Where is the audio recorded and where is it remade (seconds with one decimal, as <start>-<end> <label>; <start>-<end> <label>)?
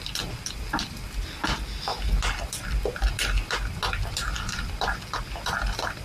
0.0-6.0 recorded